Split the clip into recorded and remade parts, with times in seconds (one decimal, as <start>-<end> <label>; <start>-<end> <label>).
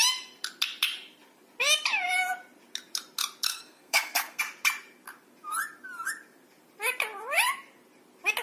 0.0-3.5 recorded; 3.5-4.4 remade; 4.4-8.4 recorded